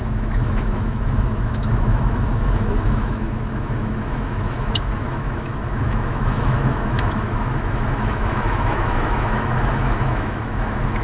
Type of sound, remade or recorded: remade